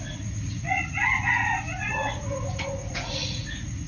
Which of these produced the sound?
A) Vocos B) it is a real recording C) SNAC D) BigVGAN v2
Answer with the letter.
A